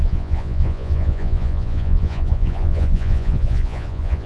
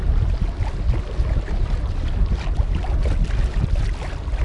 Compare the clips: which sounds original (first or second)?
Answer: second